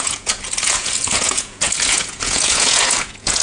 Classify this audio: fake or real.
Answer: fake